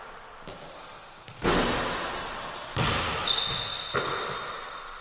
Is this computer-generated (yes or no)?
no